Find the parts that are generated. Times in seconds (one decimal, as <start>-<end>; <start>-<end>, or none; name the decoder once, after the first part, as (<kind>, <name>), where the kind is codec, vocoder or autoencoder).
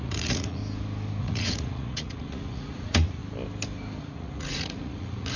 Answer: 0.0-0.6 (vocoder, Vocos); 1.2-3.2; 4.0-5.4